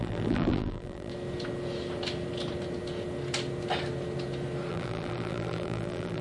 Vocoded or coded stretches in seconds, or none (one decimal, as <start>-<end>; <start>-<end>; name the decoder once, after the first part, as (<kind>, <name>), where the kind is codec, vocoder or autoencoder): 0.0-1.1 (vocoder, BigVGAN v2); 4.7-6.2